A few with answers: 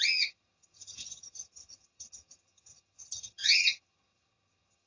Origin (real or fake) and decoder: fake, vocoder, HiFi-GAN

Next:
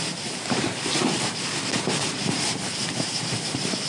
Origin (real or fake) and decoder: fake, vocoder, BigVGAN v2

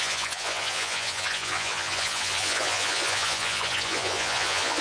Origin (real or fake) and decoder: fake, vocoder, Vocos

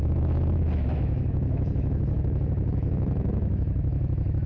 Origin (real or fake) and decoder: fake, autoencoder, DAC-VAE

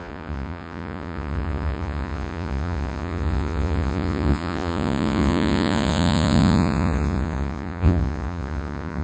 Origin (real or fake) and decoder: fake, vocoder, Vocos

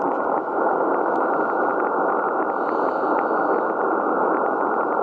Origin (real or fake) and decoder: real